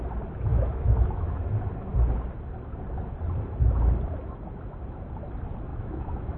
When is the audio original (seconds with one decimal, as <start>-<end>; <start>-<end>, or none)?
0.0-0.5; 1.4-5.7